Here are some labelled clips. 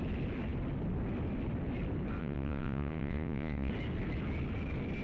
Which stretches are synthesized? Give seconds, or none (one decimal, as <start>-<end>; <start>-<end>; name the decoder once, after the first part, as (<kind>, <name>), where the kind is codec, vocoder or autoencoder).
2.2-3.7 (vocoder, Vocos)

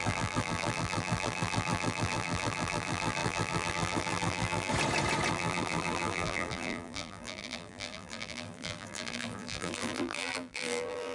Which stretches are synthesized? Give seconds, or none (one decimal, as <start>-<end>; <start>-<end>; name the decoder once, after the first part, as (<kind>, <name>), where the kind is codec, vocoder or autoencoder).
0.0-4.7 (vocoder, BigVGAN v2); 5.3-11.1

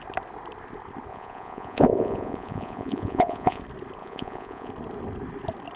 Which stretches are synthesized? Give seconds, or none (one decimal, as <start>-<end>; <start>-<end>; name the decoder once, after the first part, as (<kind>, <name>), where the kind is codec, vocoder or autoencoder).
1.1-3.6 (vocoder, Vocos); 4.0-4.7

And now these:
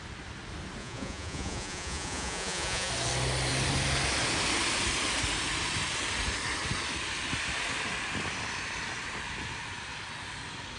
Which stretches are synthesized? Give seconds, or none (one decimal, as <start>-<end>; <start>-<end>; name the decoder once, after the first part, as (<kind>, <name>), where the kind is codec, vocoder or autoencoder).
0.8-2.9 (vocoder, Vocos)

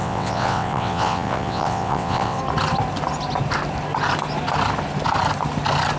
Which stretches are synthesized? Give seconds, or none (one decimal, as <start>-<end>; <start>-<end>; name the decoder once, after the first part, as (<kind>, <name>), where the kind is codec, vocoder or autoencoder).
0.0-2.4 (vocoder, WaveNeXt)

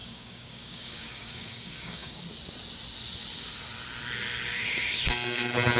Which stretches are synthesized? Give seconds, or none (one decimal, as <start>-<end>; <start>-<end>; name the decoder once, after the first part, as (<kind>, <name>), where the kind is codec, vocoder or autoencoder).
0.0-2.2 (codec, DAC)

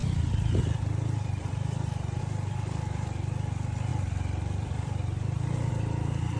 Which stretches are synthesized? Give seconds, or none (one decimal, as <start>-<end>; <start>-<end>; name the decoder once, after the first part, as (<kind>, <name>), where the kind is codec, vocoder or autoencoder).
0.0-2.2 (vocoder, BigVGAN v2); 3.9-5.7

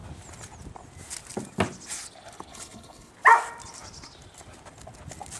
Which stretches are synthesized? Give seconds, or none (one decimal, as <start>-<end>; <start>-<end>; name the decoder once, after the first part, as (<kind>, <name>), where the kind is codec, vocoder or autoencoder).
2.5-3.1 (codec, HILCodec)